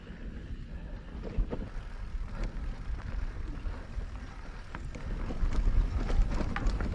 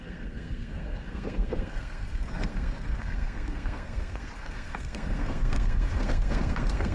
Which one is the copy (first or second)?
second